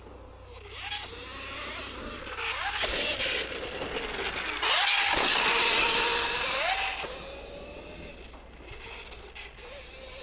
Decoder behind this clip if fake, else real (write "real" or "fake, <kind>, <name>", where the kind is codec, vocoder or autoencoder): real